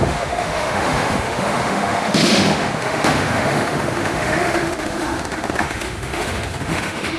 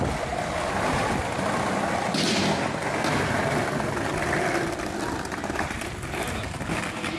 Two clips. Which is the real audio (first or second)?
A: second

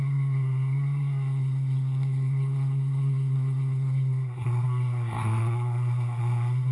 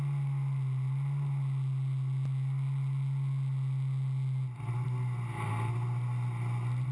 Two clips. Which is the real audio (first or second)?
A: second